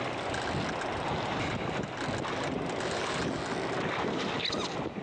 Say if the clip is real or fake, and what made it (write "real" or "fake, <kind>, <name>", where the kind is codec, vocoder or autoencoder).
real